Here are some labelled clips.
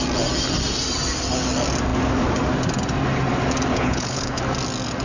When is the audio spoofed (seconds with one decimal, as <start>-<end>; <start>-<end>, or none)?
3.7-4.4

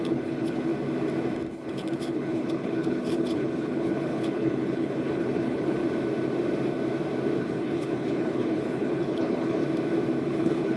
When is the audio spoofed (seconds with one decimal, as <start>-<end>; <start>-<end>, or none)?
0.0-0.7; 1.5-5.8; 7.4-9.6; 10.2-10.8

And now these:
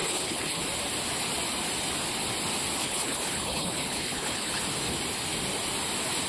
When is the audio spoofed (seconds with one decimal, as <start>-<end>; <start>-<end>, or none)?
0.0-0.6; 2.8-4.5

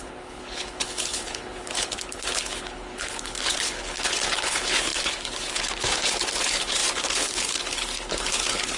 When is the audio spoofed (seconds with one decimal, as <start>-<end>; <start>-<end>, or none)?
0.0-8.8

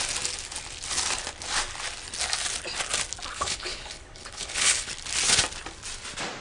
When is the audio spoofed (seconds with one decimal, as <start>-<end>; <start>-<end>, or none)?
3.3-4.9

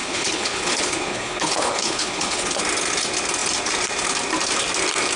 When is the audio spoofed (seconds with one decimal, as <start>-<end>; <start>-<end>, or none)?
0.0-2.6

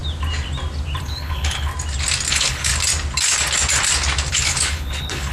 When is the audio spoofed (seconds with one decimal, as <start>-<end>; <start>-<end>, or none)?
1.0-1.7; 2.3-2.7; 4.3-5.3